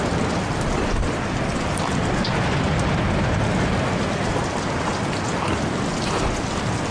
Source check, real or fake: real